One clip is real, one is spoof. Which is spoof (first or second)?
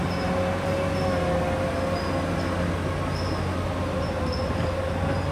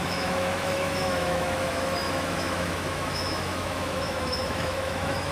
second